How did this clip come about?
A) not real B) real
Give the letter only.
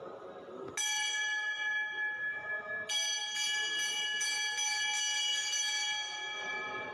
B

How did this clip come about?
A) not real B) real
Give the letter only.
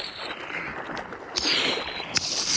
B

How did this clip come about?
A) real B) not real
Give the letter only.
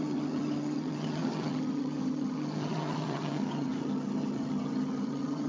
B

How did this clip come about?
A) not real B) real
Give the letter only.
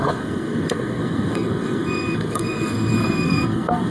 A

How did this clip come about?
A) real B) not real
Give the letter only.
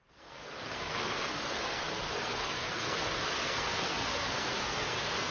B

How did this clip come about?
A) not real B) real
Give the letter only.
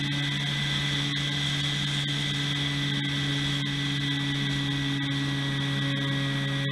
B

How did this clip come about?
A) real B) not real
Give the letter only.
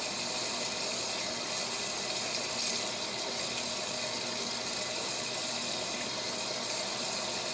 A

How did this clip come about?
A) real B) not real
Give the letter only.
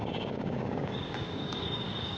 B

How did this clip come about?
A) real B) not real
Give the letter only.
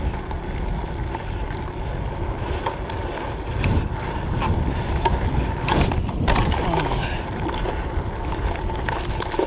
A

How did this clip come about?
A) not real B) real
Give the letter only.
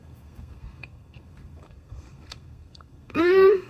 A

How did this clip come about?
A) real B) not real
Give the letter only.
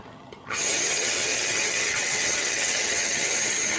B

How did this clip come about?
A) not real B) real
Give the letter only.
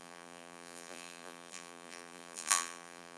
A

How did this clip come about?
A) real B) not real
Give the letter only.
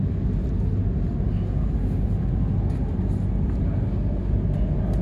A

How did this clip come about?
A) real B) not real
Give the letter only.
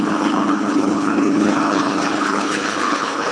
B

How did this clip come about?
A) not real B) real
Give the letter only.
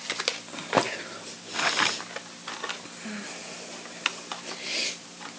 B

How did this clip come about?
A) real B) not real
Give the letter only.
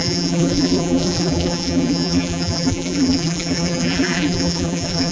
B